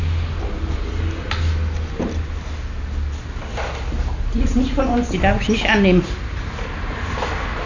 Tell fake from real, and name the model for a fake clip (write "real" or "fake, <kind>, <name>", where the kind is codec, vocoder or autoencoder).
real